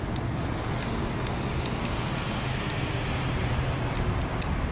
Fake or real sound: real